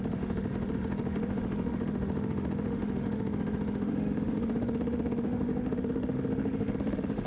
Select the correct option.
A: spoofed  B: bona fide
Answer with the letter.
A